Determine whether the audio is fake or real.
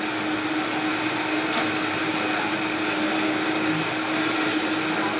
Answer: real